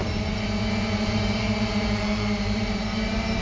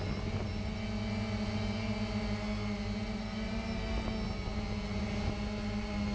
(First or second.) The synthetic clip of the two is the first